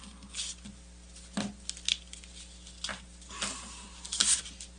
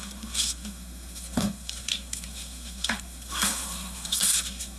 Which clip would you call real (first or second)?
first